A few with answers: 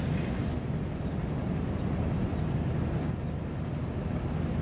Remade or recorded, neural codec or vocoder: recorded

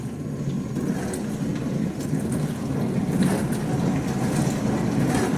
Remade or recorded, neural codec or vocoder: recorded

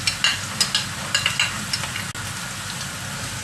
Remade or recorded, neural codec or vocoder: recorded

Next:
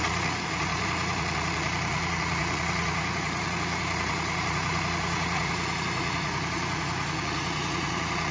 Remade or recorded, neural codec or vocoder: remade, vocoder, Vocos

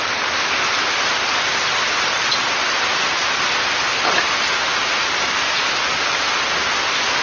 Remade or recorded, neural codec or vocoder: recorded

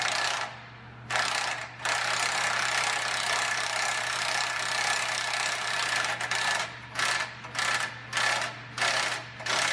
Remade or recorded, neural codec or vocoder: recorded